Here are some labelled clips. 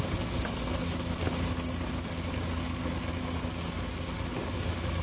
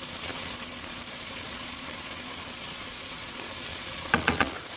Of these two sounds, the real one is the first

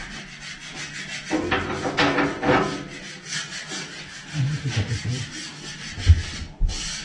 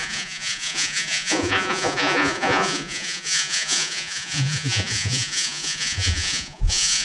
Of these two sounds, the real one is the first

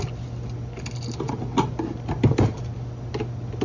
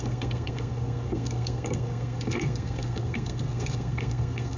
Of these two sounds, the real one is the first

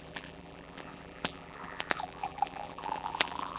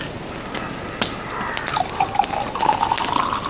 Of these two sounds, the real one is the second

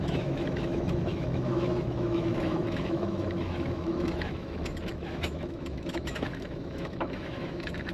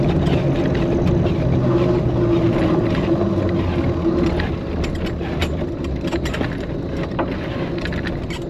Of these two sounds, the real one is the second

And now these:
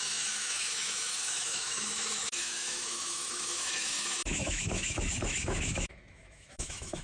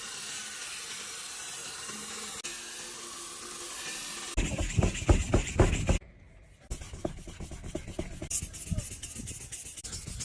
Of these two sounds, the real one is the second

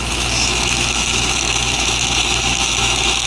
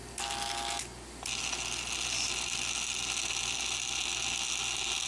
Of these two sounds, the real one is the second